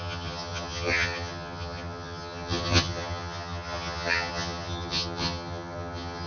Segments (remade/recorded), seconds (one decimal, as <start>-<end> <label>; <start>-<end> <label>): 0.0-6.3 remade